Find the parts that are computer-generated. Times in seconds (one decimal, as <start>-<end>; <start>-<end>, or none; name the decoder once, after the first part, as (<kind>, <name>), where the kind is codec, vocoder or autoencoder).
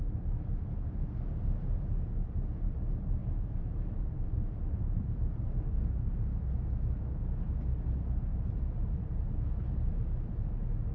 3.2-5.6 (vocoder, BigVGAN v2); 8.3-10.3